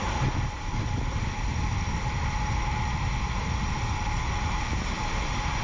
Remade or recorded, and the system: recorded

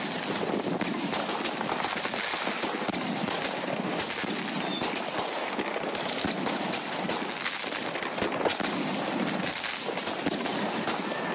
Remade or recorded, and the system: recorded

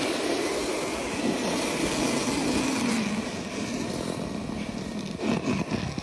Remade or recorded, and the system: recorded